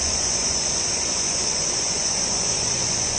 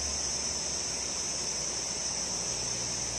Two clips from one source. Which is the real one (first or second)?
second